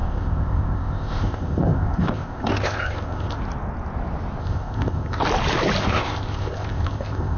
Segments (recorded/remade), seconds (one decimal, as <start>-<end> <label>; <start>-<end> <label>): 0.0-3.4 remade; 3.4-4.4 recorded; 4.4-5.2 remade; 5.2-5.8 recorded; 5.8-7.4 remade